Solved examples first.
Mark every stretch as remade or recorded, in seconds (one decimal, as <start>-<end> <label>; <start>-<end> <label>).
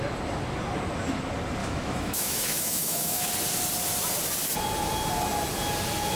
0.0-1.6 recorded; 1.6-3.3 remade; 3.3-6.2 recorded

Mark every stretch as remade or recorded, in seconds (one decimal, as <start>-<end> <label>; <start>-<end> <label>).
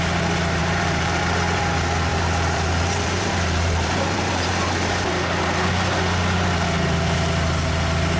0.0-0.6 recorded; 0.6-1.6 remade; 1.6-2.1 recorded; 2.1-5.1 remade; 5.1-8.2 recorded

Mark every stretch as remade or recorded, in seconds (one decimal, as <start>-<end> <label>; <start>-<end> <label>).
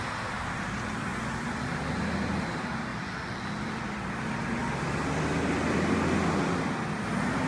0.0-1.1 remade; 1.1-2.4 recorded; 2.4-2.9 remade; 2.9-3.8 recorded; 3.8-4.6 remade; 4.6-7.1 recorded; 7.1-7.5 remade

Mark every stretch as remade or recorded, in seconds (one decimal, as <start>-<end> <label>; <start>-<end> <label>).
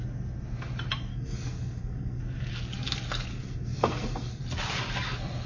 0.0-1.1 recorded; 1.1-2.2 remade; 2.2-3.3 recorded; 3.3-4.4 remade; 4.4-5.5 recorded